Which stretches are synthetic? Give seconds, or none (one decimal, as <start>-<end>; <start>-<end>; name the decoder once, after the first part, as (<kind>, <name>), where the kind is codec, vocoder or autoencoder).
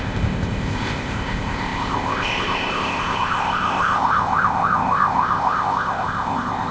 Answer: 0.0-6.7 (codec, ZipCodec)